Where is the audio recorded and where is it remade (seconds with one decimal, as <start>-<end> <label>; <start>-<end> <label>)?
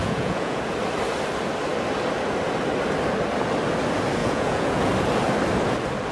0.0-0.6 remade; 0.6-4.2 recorded; 4.2-4.9 remade; 4.9-6.1 recorded